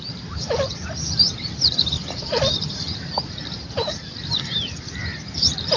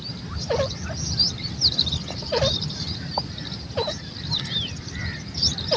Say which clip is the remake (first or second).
first